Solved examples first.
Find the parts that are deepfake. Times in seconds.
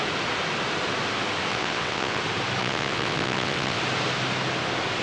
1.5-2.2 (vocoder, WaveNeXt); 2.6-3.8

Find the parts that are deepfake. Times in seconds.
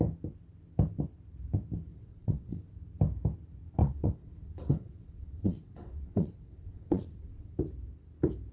1.9-2.7 (vocoder, WaveNeXt); 3.8-7.5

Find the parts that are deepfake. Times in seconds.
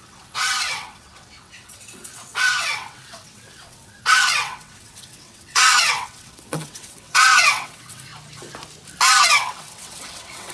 0.0-8.1 (vocoder, WaveNeXt); 9.2-10.5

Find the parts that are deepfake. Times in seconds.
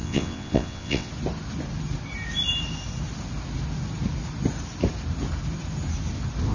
0.0-1.1 (vocoder, WaveNeXt)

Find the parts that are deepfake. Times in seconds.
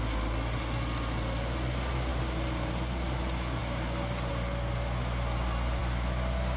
none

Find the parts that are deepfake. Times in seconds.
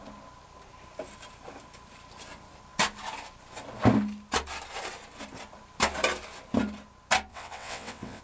7.3-8.2 (vocoder, WaveNeXt)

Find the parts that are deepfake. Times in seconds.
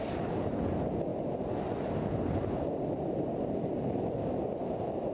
none